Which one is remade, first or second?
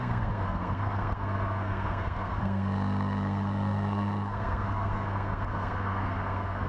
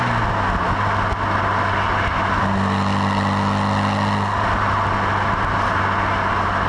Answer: first